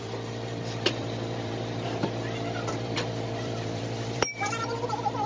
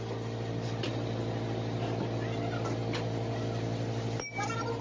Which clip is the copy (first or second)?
first